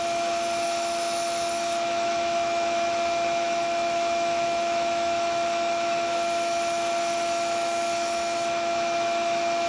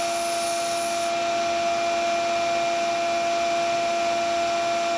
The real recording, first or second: second